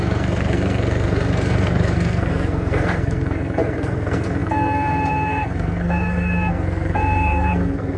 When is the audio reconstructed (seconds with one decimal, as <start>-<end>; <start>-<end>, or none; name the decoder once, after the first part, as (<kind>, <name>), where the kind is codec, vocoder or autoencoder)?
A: 0.0-8.0 (codec, SNAC)